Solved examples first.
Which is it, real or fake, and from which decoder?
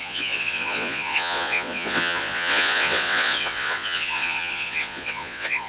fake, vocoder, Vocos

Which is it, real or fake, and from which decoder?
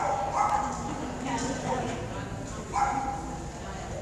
real